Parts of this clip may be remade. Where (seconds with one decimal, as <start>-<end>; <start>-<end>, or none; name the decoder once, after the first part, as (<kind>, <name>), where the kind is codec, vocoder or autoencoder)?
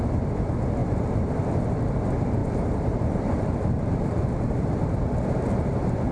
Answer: 0.8-1.3 (vocoder, BigVGAN v2); 2.4-4.8